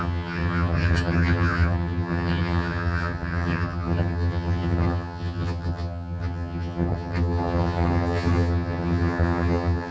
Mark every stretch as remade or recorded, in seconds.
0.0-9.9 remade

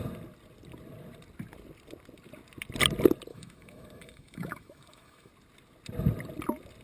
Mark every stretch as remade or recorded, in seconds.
0.0-3.3 recorded; 3.3-5.3 remade; 5.3-6.8 recorded

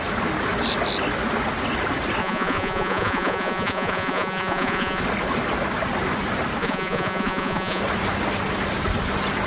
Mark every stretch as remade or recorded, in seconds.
0.0-2.2 recorded; 2.2-5.0 remade; 5.0-6.6 recorded; 6.6-7.8 remade; 7.8-9.5 recorded

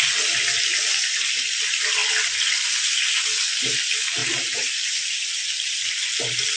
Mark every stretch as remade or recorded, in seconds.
0.0-4.2 recorded; 4.2-6.6 remade